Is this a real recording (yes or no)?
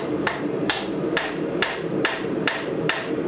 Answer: no